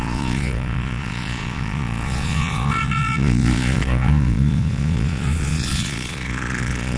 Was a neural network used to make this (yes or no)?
yes